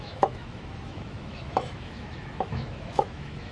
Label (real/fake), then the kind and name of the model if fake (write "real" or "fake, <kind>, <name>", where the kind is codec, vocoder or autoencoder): fake, autoencoder, DAC-VAE